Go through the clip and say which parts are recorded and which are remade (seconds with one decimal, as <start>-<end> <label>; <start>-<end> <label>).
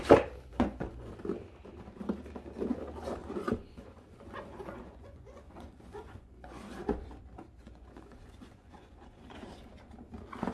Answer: 0.0-0.5 recorded; 0.5-1.1 remade; 1.1-3.2 recorded; 3.2-6.8 remade; 6.8-7.6 recorded; 7.6-9.7 remade; 9.7-10.5 recorded